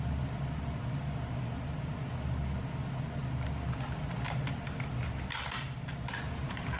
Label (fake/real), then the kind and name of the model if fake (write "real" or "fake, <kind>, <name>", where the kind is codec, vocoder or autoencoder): real